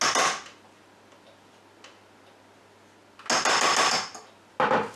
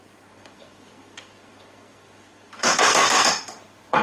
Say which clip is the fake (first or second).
second